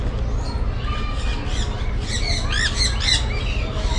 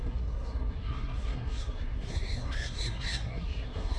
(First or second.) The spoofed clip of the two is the second